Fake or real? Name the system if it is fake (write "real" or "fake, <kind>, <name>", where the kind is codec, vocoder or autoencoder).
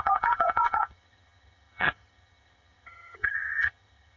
fake, vocoder, HiFi-GAN